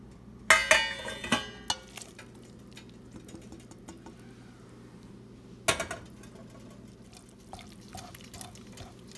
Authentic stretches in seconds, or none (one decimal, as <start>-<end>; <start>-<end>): 0.0-9.2